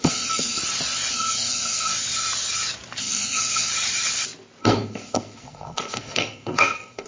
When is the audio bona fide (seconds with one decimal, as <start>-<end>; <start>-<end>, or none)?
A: 0.6-1.1; 1.9-3.0; 3.7-4.6